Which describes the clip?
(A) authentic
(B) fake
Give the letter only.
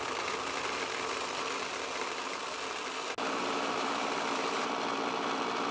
A